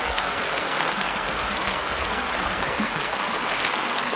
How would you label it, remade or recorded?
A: remade